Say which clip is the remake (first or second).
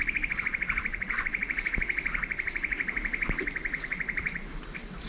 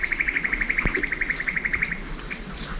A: first